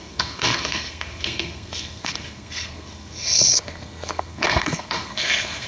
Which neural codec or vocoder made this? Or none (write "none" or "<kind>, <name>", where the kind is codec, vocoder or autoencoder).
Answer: codec, SNAC